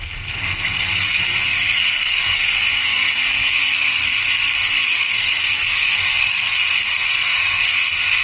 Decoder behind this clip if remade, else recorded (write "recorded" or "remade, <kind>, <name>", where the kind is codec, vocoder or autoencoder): remade, codec, SNAC